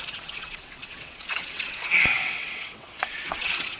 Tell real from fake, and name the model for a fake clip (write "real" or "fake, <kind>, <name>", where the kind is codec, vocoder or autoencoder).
fake, vocoder, WaveNeXt